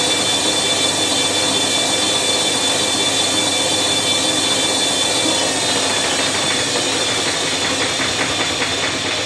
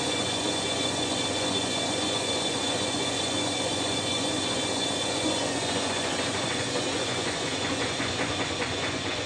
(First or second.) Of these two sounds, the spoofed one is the second